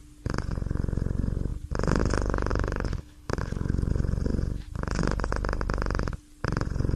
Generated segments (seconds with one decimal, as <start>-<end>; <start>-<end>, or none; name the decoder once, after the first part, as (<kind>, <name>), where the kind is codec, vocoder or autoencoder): 2.5-3.9 (codec, HILCodec)